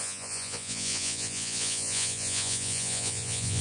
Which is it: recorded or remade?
remade